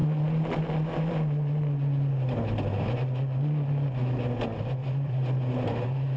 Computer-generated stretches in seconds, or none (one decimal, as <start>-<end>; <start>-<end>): 0.0-1.1; 4.8-6.2